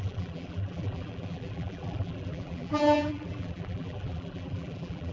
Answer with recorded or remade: remade